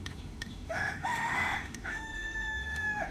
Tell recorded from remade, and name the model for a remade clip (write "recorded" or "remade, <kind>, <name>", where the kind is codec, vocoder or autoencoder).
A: remade, autoencoder, DAC-VAE